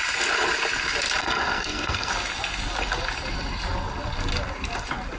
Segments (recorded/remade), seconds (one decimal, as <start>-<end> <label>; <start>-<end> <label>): 0.0-1.2 recorded; 1.2-2.1 remade; 2.1-5.2 recorded